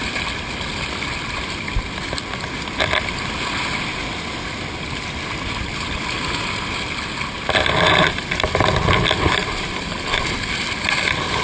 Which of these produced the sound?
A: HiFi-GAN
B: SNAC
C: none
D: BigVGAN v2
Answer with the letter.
C